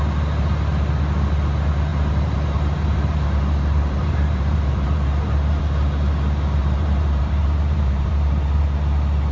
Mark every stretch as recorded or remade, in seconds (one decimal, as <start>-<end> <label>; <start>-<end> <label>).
0.0-1.9 recorded; 1.9-5.6 remade; 5.6-6.6 recorded; 6.6-8.6 remade; 8.6-9.3 recorded